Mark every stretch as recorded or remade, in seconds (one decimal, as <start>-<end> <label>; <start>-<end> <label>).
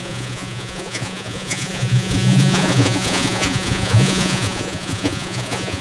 0.0-5.8 remade